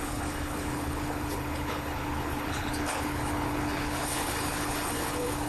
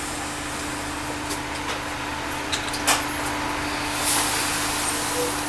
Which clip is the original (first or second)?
second